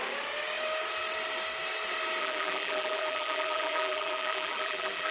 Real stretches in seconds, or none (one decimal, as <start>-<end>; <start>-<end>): 0.0-2.2